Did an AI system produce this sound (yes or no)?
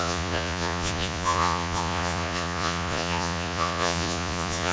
yes